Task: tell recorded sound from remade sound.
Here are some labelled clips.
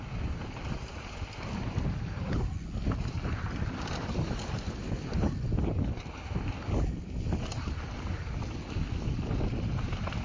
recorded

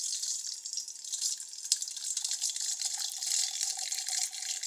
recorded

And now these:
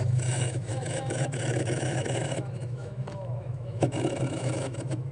remade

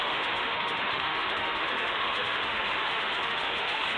remade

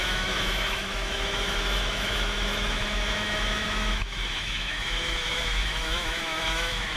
remade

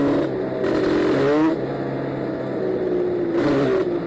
recorded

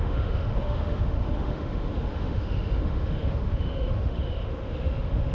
remade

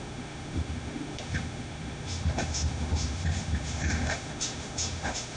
remade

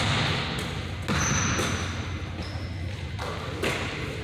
recorded